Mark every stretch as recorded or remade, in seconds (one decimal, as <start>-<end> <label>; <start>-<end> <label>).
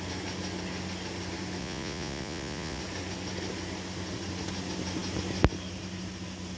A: 0.0-1.6 recorded; 1.6-2.8 remade; 2.8-6.6 recorded